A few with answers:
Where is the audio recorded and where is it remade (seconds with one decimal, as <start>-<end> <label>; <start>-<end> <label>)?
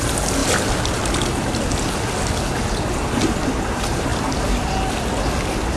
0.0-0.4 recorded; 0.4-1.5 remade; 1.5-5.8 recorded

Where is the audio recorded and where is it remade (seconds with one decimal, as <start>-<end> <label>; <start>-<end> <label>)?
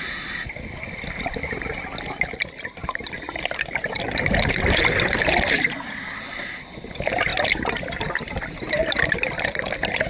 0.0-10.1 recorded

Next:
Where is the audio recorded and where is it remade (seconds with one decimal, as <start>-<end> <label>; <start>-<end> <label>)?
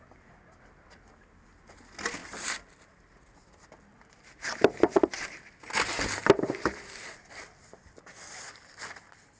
0.0-9.4 recorded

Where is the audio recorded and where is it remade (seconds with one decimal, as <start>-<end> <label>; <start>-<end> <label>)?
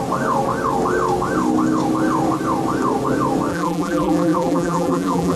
0.0-3.5 recorded; 3.5-5.4 remade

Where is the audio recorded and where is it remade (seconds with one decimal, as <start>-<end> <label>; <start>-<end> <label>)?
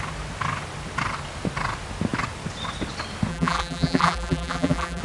0.0-3.3 recorded; 3.3-5.0 remade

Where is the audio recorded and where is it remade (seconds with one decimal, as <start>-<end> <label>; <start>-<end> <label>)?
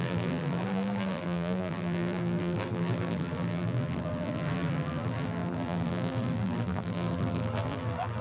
0.0-8.2 remade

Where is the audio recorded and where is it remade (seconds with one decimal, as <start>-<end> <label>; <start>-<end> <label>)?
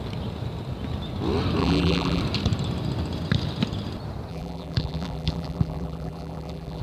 0.0-1.6 recorded; 1.6-2.2 remade; 2.2-4.3 recorded; 4.3-6.8 remade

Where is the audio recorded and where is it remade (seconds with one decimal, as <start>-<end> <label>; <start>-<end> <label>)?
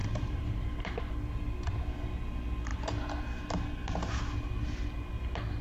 0.0-1.0 remade; 1.0-5.6 recorded